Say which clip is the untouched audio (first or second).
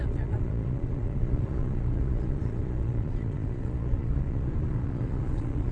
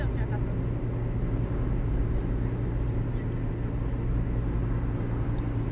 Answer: second